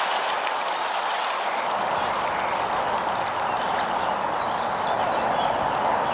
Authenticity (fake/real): real